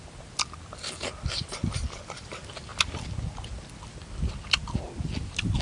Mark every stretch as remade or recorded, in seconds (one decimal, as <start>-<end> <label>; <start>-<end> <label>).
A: 0.0-5.6 recorded